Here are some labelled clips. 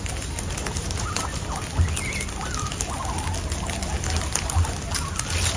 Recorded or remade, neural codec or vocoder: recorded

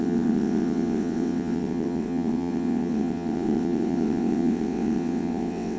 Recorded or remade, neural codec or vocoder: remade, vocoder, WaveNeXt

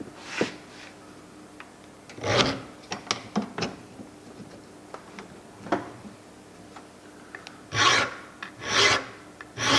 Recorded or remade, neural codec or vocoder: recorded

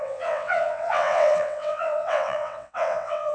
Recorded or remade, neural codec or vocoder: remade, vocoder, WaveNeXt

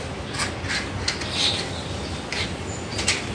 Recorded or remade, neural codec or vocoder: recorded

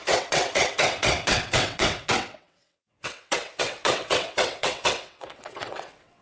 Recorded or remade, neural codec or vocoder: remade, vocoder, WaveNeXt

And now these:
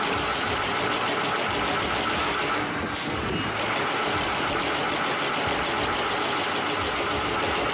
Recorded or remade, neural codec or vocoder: recorded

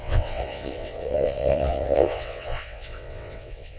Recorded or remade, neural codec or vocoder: remade, vocoder, WaveNeXt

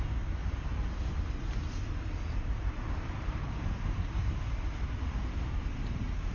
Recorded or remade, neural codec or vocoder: recorded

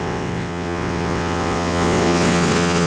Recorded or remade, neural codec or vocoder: remade, vocoder, WaveNeXt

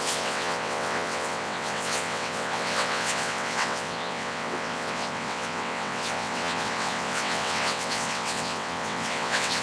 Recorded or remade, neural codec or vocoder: remade, vocoder, WaveNeXt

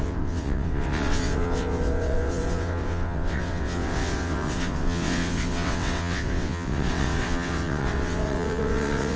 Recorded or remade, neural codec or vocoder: remade, vocoder, WaveNeXt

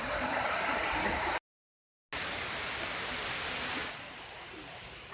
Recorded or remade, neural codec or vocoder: recorded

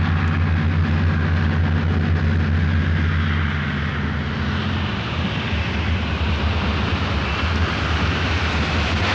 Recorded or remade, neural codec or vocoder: recorded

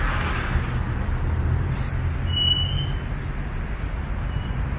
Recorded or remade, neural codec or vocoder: recorded